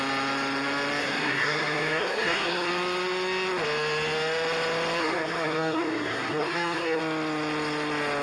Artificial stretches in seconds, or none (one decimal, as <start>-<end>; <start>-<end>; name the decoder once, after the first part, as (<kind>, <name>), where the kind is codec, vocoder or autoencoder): 1.0-2.7 (codec, SNAC); 5.0-7.0